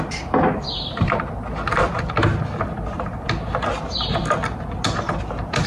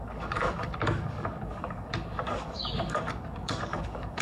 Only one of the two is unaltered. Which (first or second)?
first